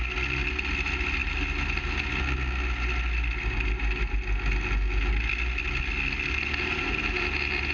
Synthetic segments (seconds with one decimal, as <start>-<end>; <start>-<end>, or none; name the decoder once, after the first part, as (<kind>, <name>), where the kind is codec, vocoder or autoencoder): none